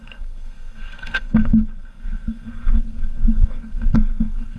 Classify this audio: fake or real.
fake